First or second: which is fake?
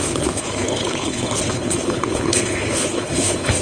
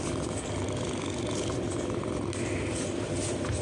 first